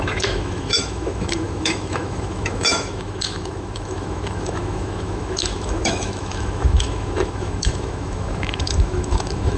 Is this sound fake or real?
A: fake